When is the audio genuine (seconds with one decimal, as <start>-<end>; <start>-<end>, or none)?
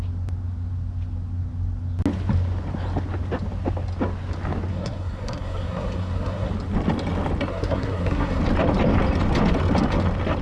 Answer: 0.0-4.7; 6.5-7.5; 8.4-10.4